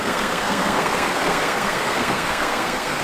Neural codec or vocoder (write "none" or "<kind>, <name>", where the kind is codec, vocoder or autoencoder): codec, SNAC